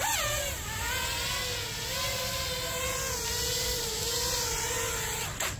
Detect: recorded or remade recorded